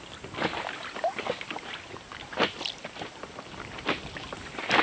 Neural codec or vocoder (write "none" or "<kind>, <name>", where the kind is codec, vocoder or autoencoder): none